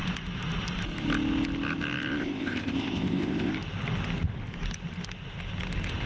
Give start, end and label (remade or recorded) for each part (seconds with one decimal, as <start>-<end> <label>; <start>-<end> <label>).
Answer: 0.0-2.2 recorded; 2.2-3.5 remade; 3.5-6.1 recorded